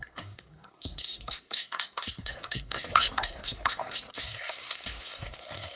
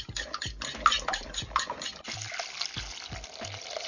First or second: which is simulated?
first